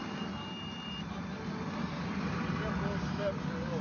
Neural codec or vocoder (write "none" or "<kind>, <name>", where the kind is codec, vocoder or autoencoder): none